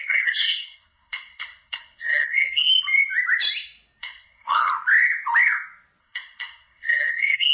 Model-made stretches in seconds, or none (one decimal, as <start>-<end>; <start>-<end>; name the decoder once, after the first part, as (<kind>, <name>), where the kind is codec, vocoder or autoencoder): 0.0-2.7 (codec, SNAC); 4.0-4.7; 6.0-7.5